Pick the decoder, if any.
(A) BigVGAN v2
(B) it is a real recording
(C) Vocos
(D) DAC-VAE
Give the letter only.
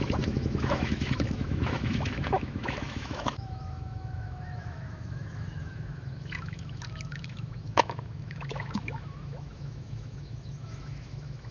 D